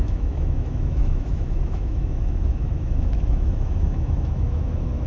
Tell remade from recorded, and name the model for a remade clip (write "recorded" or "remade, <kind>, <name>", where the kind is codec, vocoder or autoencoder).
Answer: remade, autoencoder, DAC-VAE